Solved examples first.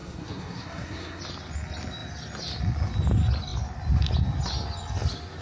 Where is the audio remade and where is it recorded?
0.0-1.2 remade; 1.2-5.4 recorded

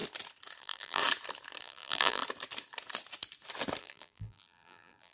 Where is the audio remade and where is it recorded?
0.0-0.6 recorded; 0.6-1.0 remade; 1.0-1.6 recorded; 1.6-2.2 remade; 2.2-3.8 recorded; 3.8-5.1 remade

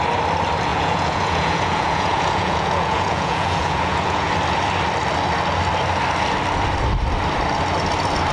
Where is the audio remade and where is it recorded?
0.0-0.7 recorded; 0.7-4.3 remade; 4.3-8.3 recorded

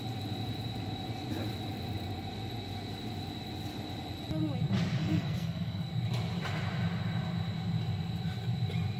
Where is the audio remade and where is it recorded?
0.0-5.0 recorded; 5.0-5.9 remade; 5.9-9.0 recorded

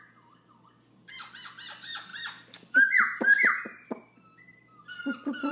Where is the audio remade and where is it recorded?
0.0-1.0 recorded; 1.0-1.5 remade; 1.5-2.1 recorded; 2.1-5.5 remade

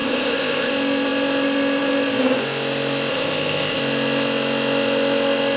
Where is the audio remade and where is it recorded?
0.0-0.7 remade; 0.7-3.1 recorded; 3.1-3.8 remade; 3.8-5.6 recorded

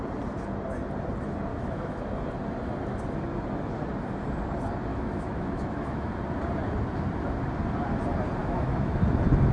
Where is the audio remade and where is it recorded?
0.0-1.5 recorded; 1.5-2.0 remade; 2.0-4.9 recorded; 4.9-6.1 remade; 6.1-8.4 recorded; 8.4-9.0 remade; 9.0-9.5 recorded

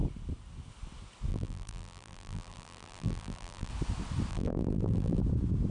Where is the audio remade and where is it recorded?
0.0-1.3 recorded; 1.3-3.7 remade; 3.7-4.3 recorded; 4.3-5.2 remade; 5.2-5.7 recorded